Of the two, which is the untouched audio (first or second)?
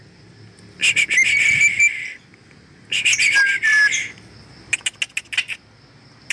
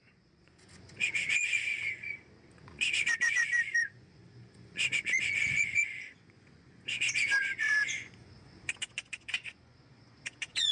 first